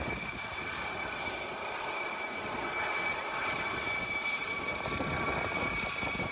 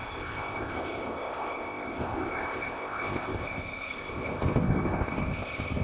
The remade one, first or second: second